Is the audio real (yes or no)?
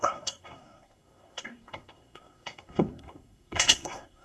no